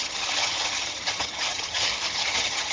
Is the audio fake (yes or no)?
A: yes